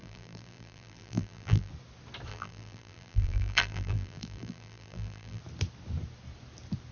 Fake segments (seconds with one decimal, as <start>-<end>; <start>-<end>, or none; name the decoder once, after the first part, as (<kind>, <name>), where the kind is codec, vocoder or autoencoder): 0.0-1.7 (vocoder, BigVGAN v2); 2.3-5.4